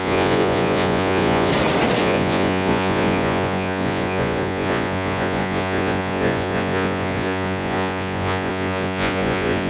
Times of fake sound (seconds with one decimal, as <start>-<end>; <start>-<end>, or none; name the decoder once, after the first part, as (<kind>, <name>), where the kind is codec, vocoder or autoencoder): 0.0-1.5 (vocoder, Vocos); 2.0-9.7